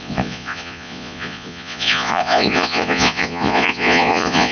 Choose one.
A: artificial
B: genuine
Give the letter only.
A